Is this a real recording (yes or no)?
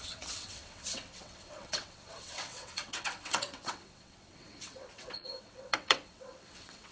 no